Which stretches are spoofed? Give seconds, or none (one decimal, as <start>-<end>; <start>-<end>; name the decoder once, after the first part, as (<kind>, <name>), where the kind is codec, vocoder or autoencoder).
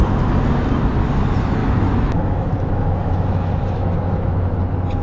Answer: 1.6-4.5 (autoencoder, DAC-VAE)